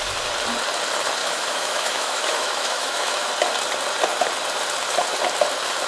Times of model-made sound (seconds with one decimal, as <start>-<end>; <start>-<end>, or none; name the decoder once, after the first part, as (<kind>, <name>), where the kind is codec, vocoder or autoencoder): 1.2-3.3 (autoencoder, DAC-VAE)